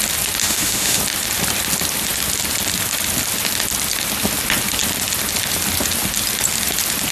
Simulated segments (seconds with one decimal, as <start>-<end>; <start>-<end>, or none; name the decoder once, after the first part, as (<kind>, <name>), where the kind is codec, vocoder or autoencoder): 0.4-1.0 (autoencoder, DAC-VAE)